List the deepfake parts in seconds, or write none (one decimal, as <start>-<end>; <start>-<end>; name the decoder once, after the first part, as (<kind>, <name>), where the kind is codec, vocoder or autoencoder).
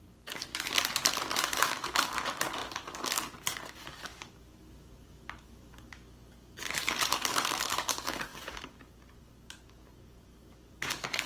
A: 0.0-0.5 (codec, DAC); 1.3-11.3